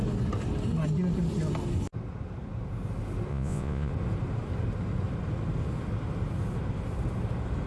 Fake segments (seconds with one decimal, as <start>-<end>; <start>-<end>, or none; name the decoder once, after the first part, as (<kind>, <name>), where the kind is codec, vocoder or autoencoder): 3.3-3.9 (vocoder, Vocos)